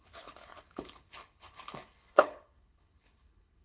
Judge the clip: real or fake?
fake